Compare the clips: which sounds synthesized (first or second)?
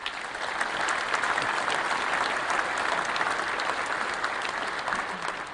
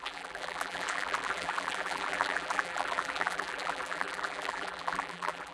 second